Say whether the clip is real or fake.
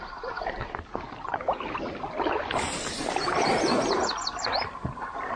real